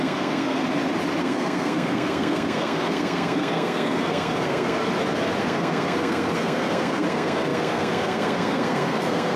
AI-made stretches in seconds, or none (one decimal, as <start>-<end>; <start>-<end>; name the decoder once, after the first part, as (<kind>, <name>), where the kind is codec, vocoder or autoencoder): 0.0-0.6 (codec, SNAC); 1.2-4.8; 5.4-9.4